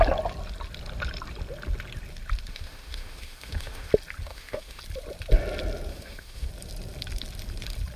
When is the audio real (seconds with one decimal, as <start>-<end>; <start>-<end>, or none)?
0.0-2.5; 3.9-4.3; 4.8-5.9; 6.5-8.0

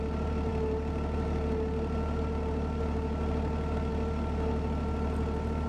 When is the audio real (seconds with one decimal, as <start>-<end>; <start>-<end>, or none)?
0.0-5.7

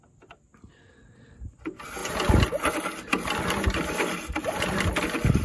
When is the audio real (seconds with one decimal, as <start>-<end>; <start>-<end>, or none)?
0.0-5.4

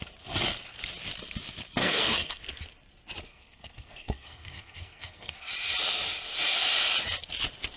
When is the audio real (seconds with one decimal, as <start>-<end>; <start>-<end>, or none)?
0.0-1.8; 2.4-3.3; 5.5-7.8

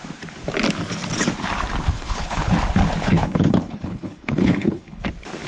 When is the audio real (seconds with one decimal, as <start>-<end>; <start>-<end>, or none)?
0.0-1.9; 2.5-3.0; 5.0-5.5